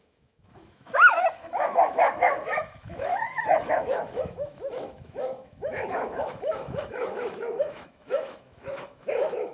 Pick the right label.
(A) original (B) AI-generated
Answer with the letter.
B